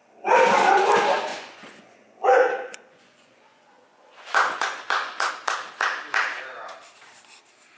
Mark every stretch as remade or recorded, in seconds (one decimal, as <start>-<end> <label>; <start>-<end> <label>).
0.0-1.3 recorded; 1.3-5.3 remade; 5.3-7.8 recorded